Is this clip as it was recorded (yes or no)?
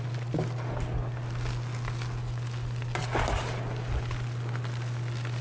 yes